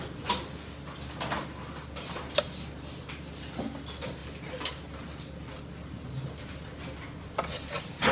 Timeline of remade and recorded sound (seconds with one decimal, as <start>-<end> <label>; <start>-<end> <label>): 0.0-8.1 recorded